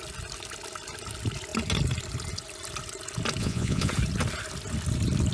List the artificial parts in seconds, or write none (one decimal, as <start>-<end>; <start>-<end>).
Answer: 3.4-3.9